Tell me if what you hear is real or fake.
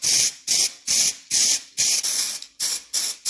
real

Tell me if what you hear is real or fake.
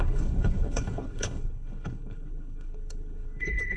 fake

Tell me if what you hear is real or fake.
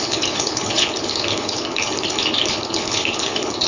fake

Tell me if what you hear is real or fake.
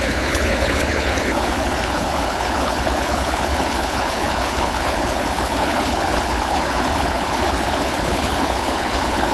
fake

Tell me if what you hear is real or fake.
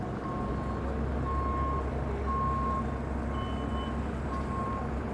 real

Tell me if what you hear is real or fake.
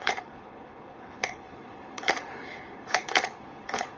fake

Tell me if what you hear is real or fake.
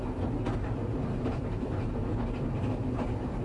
real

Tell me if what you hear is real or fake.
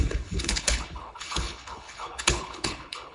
fake